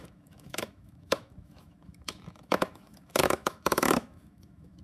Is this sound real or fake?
fake